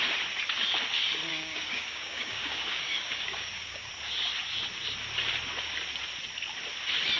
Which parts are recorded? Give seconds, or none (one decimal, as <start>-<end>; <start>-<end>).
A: 0.0-1.3; 3.9-7.2